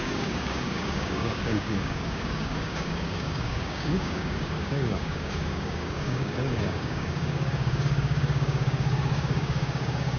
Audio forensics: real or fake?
fake